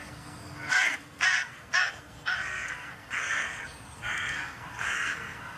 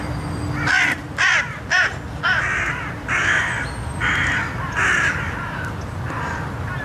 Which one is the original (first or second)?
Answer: second